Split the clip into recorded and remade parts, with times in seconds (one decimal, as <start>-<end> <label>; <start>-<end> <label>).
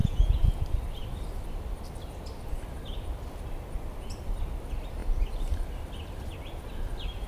0.0-0.6 remade; 0.6-7.3 recorded